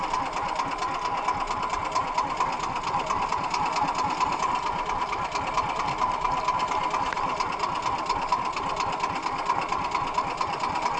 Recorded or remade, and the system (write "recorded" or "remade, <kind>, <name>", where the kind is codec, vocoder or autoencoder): recorded